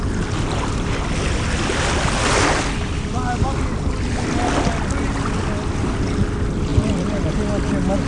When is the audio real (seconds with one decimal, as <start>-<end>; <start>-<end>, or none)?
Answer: 0.0-6.7; 7.3-8.1